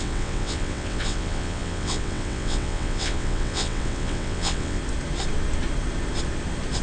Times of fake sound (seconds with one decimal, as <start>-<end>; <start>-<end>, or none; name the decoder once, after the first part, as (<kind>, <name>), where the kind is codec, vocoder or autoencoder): 0.0-4.8 (vocoder, WaveNeXt)